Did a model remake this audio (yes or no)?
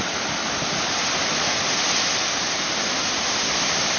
no